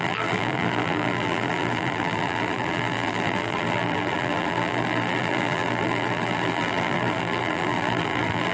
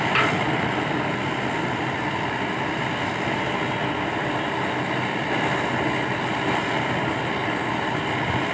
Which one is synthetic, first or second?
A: first